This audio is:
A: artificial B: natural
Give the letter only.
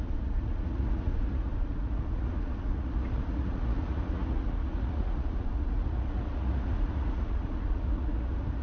A